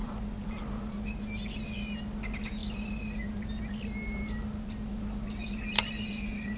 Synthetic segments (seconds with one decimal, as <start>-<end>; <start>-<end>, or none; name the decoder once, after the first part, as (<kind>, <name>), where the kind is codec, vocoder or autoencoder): 0.0-0.6 (vocoder, BigVGAN v2)